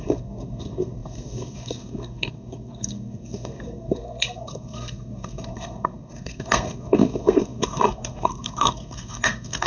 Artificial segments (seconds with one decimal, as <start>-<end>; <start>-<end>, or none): 0.0-9.7